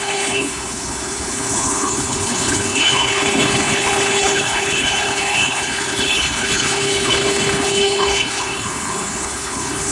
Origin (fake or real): fake